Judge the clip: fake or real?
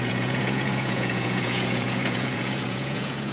fake